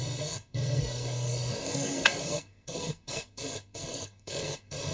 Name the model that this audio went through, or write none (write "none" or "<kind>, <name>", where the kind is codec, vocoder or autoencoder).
codec, SNAC